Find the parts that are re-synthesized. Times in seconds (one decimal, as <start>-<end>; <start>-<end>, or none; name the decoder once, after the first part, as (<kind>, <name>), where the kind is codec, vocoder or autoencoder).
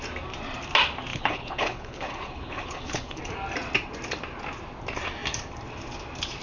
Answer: 1.1-3.2 (codec, HILCodec)